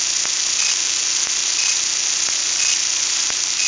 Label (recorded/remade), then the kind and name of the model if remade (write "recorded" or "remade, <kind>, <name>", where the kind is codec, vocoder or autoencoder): recorded